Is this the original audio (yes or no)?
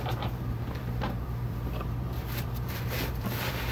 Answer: no